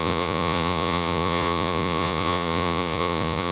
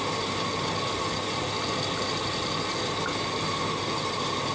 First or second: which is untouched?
second